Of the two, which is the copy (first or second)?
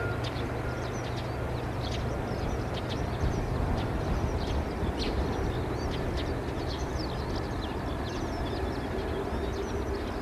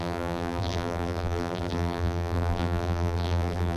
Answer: second